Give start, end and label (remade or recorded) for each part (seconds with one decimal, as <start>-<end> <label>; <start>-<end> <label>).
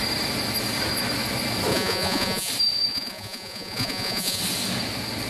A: 0.0-1.7 recorded; 1.7-2.5 remade; 2.5-2.9 recorded; 2.9-4.4 remade; 4.4-5.3 recorded